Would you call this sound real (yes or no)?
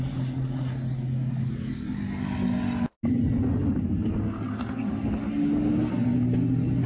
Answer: yes